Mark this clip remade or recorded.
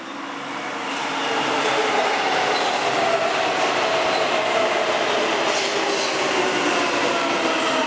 recorded